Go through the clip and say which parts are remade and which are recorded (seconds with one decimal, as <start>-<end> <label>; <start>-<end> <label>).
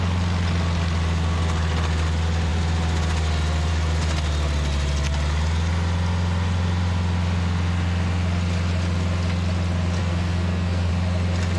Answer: 0.0-10.0 recorded; 10.0-10.9 remade; 10.9-11.6 recorded